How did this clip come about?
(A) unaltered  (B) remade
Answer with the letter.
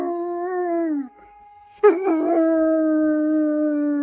B